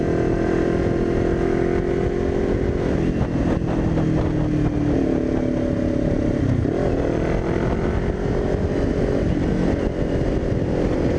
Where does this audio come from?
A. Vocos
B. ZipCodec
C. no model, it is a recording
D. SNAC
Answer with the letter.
C